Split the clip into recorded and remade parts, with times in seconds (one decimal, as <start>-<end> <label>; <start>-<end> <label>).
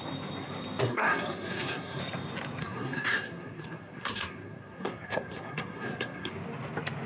0.0-0.9 recorded; 0.9-2.0 remade; 2.0-2.6 recorded; 2.6-6.3 remade; 6.3-7.1 recorded